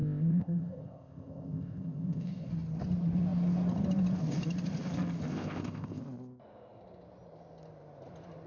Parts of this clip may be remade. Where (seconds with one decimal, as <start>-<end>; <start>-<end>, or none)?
0.0-2.5; 5.3-6.0